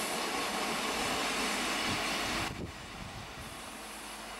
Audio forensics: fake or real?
real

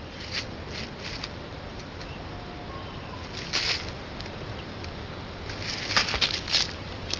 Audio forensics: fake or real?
real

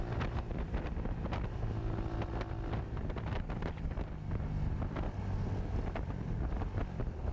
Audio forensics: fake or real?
fake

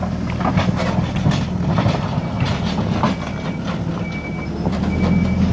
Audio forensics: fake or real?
real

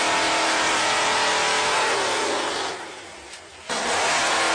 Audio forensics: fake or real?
real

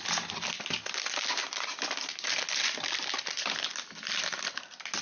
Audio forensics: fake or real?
real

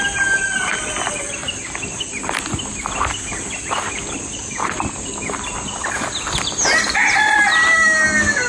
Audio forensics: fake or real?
real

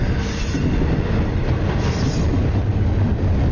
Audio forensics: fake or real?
fake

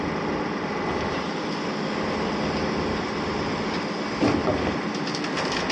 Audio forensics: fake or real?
real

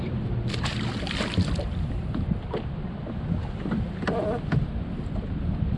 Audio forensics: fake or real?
fake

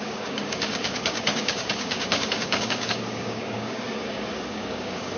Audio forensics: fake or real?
fake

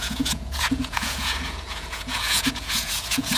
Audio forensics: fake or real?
fake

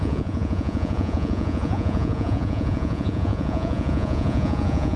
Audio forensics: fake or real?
fake